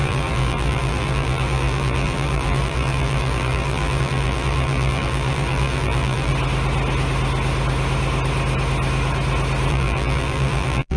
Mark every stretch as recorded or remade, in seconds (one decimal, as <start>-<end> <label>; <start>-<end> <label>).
0.0-6.3 remade; 6.3-9.7 recorded; 9.7-11.0 remade